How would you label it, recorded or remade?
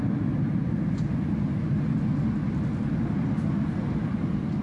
recorded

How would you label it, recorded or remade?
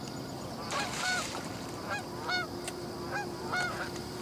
remade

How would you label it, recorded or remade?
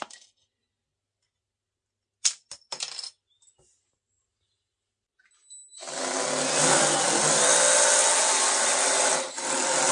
recorded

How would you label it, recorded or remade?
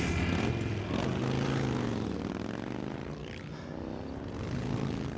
recorded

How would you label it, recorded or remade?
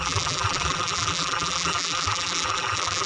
remade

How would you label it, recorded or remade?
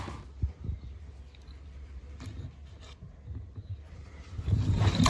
recorded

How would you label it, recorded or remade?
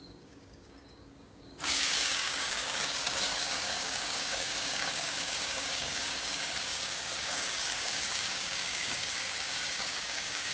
remade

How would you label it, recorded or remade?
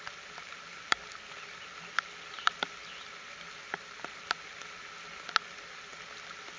recorded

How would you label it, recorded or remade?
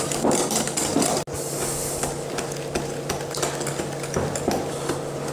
recorded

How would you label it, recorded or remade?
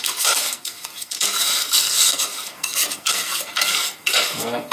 remade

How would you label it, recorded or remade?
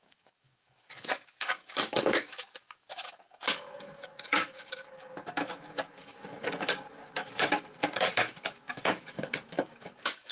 remade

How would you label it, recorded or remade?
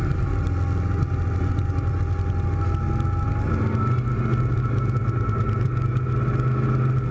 recorded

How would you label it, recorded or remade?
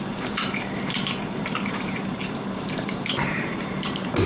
remade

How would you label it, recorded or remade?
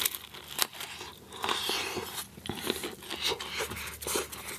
recorded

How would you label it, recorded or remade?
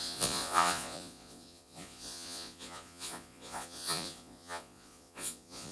remade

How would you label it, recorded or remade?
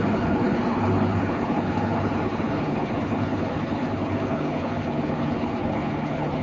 remade